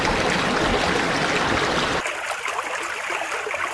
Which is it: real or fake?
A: real